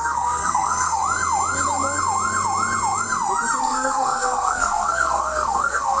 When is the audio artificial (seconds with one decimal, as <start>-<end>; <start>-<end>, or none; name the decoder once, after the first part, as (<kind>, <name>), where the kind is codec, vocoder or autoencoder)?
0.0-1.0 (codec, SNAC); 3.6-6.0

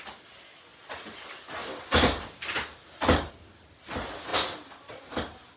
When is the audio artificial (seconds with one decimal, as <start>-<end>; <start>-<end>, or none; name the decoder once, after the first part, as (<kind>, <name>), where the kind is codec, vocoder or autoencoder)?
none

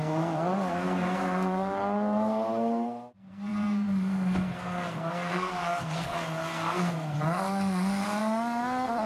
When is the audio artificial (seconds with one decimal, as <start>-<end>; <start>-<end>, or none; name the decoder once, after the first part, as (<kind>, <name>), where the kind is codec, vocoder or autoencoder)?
0.0-9.1 (codec, SNAC)

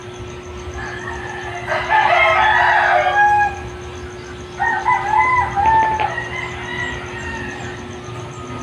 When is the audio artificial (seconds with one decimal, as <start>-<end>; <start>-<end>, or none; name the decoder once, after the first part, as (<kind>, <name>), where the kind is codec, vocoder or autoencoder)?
none

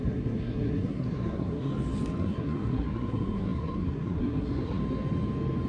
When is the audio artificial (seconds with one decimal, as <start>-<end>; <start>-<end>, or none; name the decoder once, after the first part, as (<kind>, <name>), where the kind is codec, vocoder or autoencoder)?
0.0-1.7 (codec, SNAC); 2.2-4.8

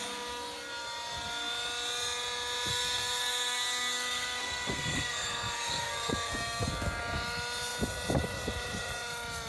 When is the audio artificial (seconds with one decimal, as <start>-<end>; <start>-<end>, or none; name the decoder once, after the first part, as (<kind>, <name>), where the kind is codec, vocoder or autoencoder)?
2.7-7.0 (codec, SNAC)

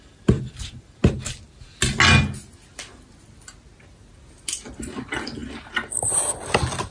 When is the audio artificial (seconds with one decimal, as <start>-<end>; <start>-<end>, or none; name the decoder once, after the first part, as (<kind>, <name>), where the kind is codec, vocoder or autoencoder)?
none

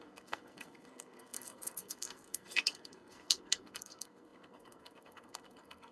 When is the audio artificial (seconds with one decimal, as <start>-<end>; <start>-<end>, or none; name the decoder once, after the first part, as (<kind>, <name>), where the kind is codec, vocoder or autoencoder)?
0.0-5.9 (codec, SNAC)